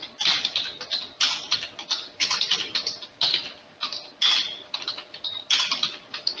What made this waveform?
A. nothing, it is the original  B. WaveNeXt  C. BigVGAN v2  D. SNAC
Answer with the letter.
A